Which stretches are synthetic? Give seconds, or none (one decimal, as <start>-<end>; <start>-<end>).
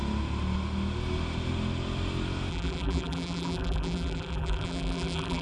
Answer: 2.5-5.4